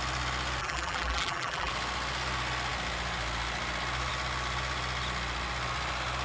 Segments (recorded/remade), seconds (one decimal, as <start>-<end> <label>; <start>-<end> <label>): 0.0-0.6 recorded; 0.6-1.7 remade; 1.7-6.2 recorded